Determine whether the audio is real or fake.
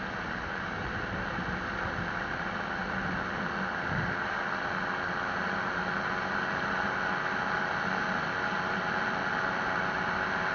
real